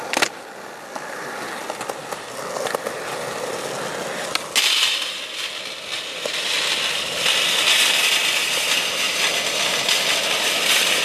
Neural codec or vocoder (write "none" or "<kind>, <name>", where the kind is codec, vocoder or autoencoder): none